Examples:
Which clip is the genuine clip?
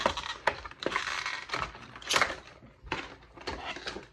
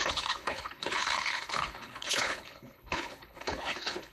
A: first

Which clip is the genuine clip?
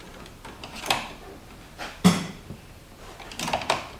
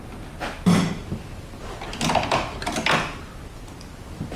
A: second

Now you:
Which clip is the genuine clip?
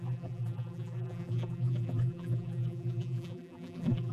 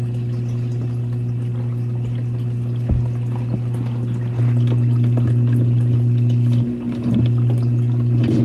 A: second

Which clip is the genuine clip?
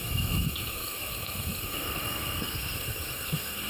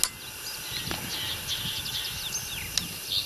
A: second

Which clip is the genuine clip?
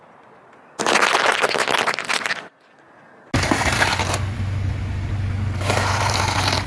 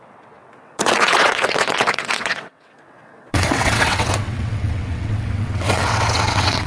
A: first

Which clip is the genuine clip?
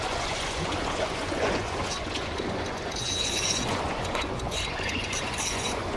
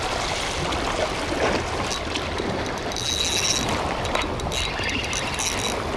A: second